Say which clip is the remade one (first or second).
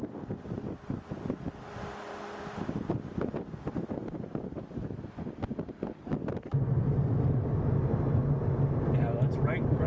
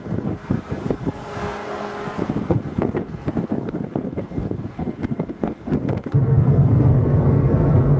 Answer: second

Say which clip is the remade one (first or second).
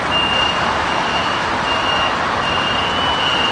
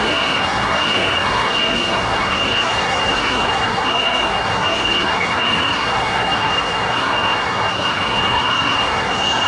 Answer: second